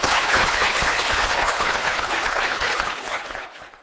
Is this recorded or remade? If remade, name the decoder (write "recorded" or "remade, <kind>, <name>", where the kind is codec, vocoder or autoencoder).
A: remade, codec, HILCodec